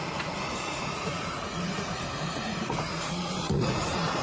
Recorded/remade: remade